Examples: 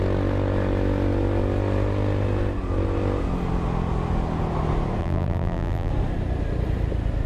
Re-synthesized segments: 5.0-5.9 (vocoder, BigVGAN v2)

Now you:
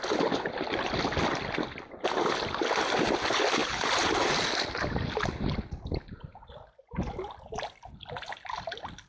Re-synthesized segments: none